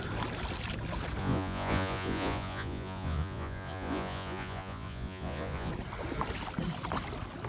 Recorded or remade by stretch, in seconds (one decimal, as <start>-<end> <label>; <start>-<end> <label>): 0.0-1.2 recorded; 1.2-5.7 remade; 5.7-7.5 recorded